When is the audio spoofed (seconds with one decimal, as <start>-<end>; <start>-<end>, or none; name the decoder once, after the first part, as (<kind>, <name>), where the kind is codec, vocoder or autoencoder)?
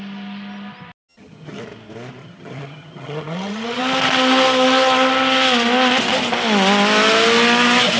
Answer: 1.1-1.6 (vocoder, HiFi-GAN); 2.2-3.8